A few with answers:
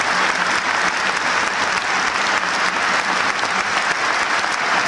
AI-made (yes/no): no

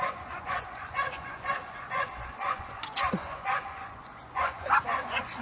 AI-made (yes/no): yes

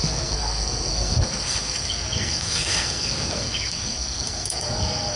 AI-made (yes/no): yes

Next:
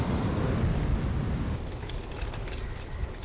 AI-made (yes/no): no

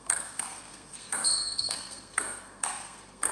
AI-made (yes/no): yes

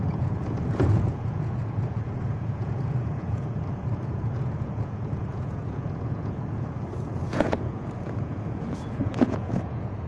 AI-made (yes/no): yes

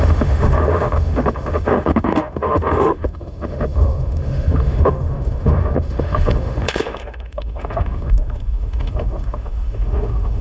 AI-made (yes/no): yes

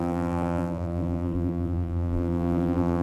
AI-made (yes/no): yes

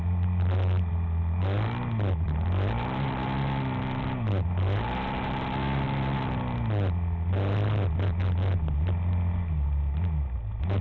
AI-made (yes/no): no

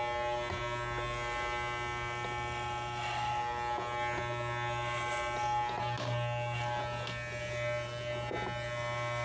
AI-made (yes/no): no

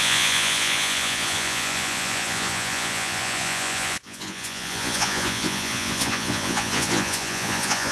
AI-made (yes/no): yes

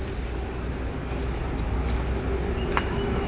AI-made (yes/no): no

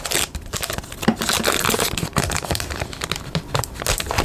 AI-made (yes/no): yes